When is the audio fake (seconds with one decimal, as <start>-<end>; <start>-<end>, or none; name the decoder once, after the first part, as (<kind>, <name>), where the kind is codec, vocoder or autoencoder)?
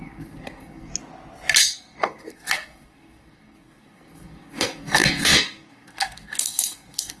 0.0-0.9 (codec, SNAC); 1.6-7.2